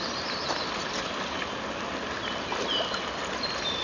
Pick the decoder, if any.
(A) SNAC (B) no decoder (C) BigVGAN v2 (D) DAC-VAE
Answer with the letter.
B